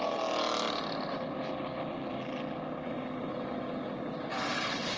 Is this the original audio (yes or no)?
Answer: yes